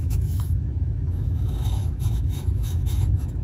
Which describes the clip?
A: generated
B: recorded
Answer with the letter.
A